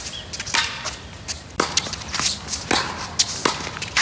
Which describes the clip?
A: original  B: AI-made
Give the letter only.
A